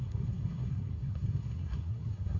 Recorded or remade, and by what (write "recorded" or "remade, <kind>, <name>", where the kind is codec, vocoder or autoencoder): remade, codec, SNAC